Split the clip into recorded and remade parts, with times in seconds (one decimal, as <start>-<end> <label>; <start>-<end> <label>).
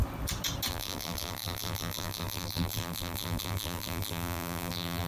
0.0-0.7 recorded; 0.7-5.1 remade